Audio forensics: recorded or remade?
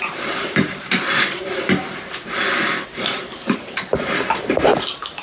remade